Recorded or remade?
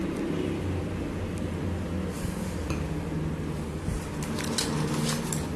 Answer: recorded